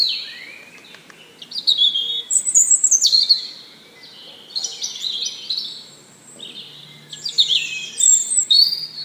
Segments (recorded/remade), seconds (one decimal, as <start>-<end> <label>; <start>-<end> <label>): 0.0-0.8 remade; 0.8-2.1 recorded; 2.1-2.6 remade; 2.6-6.7 recorded; 6.7-9.0 remade